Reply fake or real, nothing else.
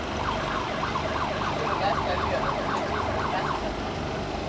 real